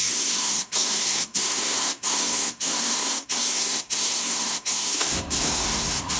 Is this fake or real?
fake